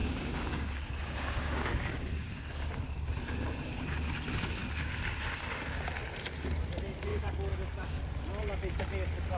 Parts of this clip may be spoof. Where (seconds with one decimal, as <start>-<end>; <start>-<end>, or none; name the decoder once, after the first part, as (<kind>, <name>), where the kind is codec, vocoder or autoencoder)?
0.0-2.7 (codec, DAC); 7.1-8.0